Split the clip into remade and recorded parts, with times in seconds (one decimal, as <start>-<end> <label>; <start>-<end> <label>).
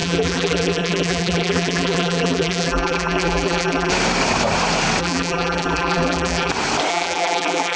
0.0-3.9 remade; 3.9-5.0 recorded; 5.0-6.5 remade; 6.5-6.9 recorded; 6.9-7.8 remade